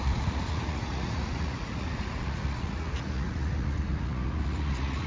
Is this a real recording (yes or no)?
no